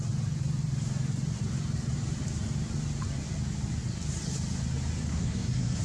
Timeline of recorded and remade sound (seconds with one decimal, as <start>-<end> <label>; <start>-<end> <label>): 0.0-5.1 recorded; 5.1-5.8 remade